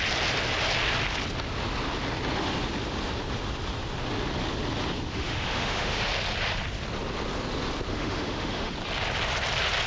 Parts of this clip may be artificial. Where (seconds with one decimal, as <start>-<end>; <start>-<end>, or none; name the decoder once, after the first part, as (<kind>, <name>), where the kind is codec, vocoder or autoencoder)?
5.1-6.0 (autoencoder, DAC-VAE); 7.9-8.7